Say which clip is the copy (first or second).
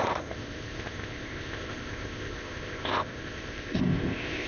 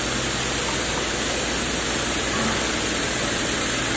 first